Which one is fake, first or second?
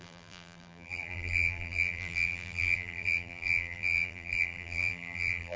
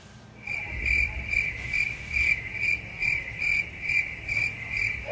first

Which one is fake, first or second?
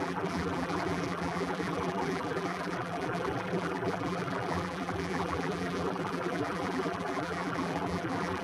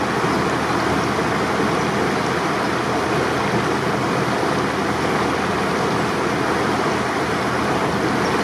first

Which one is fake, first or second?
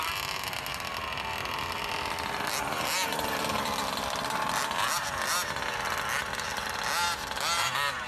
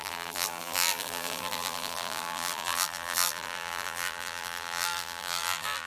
second